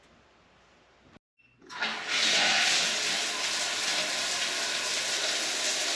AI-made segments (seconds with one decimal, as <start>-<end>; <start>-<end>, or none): none